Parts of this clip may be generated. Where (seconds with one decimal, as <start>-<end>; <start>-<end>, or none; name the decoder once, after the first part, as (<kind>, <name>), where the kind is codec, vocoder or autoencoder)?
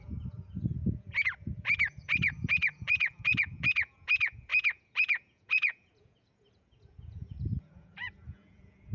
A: 0.0-8.9 (vocoder, Vocos)